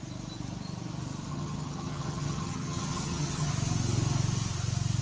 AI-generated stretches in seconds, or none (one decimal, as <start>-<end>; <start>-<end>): 1.3-3.5